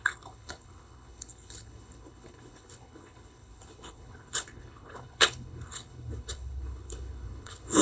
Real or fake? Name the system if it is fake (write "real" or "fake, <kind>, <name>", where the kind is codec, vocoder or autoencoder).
fake, codec, HILCodec